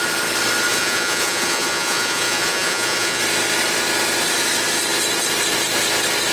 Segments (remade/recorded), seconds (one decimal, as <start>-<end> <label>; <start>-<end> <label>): 0.0-0.7 recorded; 0.7-3.2 remade; 3.2-6.3 recorded